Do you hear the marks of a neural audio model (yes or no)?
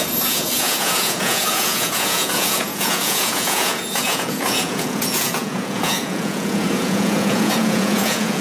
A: yes